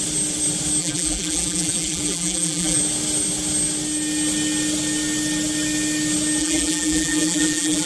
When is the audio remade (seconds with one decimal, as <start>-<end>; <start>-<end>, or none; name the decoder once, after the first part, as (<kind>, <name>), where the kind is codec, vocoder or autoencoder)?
0.8-2.8 (vocoder, BigVGAN v2); 6.4-7.9